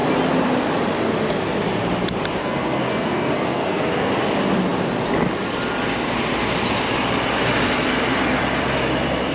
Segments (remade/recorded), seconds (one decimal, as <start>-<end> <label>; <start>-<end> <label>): 0.0-2.4 recorded; 2.4-4.1 remade; 4.1-9.3 recorded